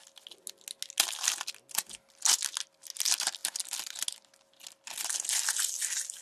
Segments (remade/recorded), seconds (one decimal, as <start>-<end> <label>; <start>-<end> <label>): 0.0-6.2 recorded